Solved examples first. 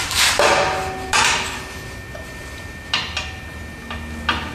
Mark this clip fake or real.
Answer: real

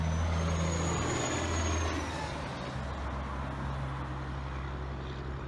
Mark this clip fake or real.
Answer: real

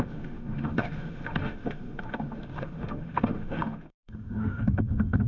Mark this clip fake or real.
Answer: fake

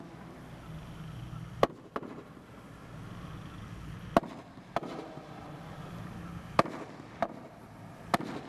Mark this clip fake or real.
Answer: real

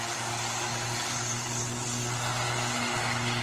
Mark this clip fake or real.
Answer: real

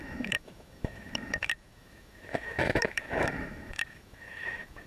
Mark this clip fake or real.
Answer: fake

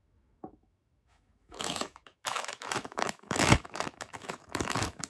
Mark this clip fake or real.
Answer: fake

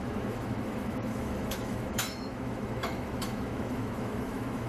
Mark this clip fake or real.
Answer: fake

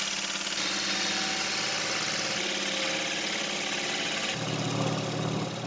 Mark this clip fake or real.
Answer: real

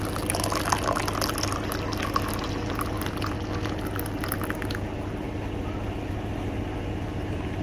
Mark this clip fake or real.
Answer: real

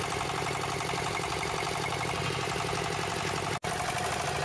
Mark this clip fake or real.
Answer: real